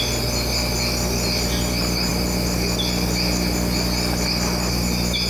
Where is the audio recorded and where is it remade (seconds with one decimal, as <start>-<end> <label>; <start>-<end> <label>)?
0.0-5.3 recorded